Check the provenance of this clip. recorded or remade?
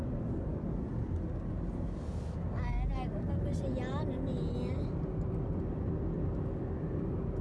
recorded